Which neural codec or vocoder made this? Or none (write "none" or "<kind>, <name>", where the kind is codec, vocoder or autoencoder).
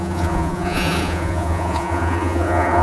vocoder, Vocos